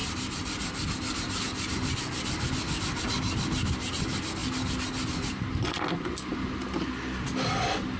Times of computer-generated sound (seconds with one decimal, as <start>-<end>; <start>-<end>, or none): none